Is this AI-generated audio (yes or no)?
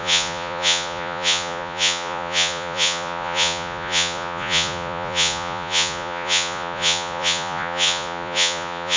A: yes